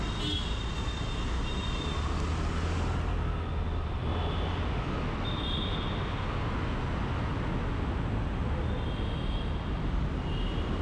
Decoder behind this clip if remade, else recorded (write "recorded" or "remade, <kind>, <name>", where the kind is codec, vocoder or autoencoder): recorded